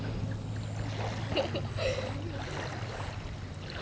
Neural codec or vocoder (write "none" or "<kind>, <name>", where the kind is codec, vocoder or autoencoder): none